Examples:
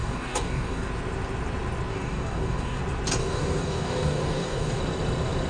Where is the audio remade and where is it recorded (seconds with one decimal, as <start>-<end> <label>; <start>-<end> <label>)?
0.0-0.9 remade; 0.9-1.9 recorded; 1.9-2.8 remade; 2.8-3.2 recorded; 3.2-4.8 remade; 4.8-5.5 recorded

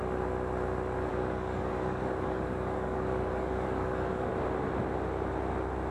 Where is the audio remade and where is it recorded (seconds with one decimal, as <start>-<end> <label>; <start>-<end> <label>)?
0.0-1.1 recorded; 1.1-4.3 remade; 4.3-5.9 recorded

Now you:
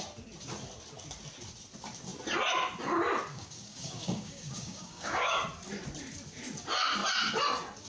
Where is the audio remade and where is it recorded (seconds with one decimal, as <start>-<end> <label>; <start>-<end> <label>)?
0.0-3.3 recorded; 3.3-5.4 remade; 5.4-7.9 recorded